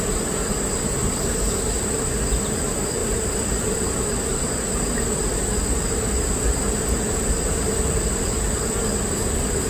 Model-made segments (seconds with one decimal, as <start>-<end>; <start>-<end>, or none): none